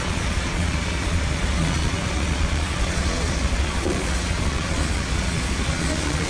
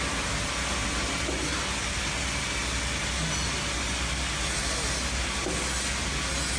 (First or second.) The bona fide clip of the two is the second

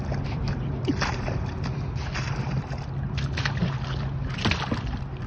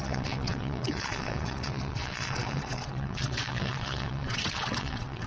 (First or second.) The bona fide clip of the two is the first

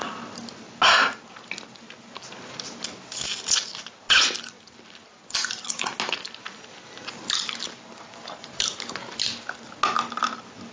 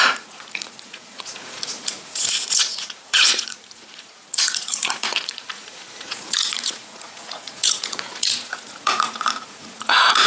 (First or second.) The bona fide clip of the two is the first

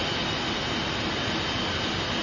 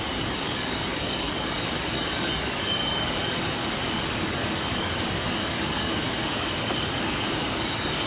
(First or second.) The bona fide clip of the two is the first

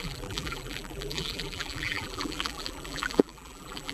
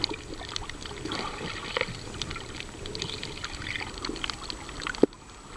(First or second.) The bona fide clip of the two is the second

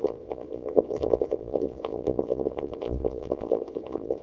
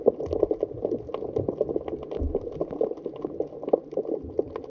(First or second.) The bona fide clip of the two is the second